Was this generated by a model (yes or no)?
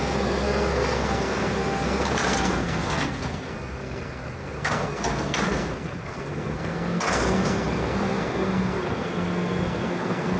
yes